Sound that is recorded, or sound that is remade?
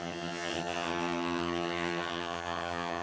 remade